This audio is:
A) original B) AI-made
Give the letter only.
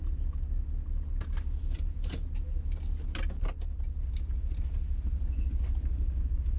A